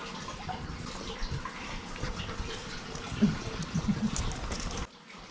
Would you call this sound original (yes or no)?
yes